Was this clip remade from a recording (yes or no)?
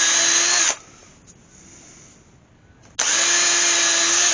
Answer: no